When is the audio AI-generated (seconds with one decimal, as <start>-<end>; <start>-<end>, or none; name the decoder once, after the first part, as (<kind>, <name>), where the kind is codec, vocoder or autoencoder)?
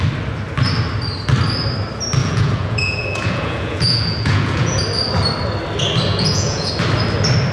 2.2-4.8 (vocoder, Vocos); 6.1-6.7